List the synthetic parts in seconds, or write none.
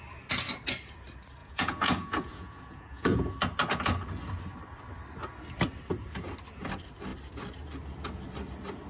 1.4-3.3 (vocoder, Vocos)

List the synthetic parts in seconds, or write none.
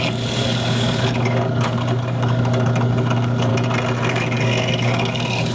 0.0-3.5 (codec, DAC); 4.1-5.5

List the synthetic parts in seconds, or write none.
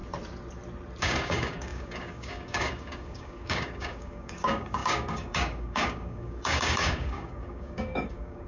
1.0-8.5 (codec, DAC)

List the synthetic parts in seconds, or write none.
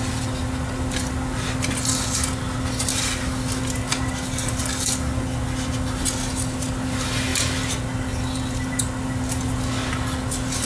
none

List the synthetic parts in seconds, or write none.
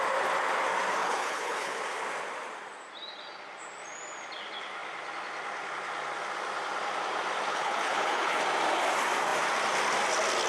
1.0-2.0 (codec, HILCodec); 7.5-8.4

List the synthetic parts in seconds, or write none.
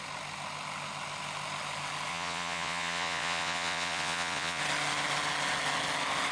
2.1-4.6 (vocoder, Vocos)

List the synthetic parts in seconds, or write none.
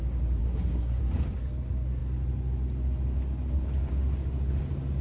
0.4-1.0 (codec, SNAC)